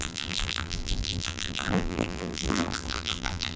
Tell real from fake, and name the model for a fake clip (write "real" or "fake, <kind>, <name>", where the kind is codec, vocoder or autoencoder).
fake, vocoder, BigVGAN v2